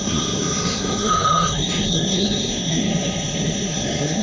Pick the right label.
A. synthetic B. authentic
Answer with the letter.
A